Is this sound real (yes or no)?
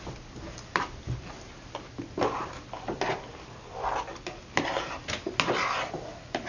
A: yes